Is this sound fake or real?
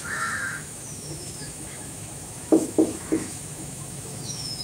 fake